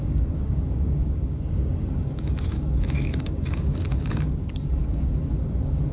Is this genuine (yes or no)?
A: no